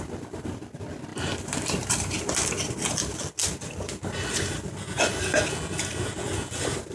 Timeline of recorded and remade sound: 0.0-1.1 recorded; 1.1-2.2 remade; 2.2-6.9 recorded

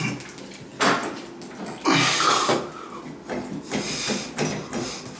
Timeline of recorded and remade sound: 0.0-5.2 recorded